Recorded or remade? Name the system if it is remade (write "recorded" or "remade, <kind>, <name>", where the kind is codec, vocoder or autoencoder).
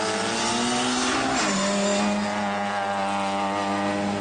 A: recorded